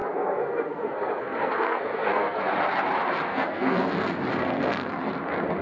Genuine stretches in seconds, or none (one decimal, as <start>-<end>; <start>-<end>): 2.4-3.3; 3.8-4.3; 4.9-5.6